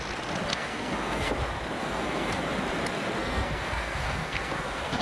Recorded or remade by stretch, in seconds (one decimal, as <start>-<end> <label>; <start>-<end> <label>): 0.0-0.5 recorded; 0.5-1.3 remade; 1.3-1.8 recorded; 1.8-2.4 remade; 2.4-3.2 recorded; 3.2-5.0 remade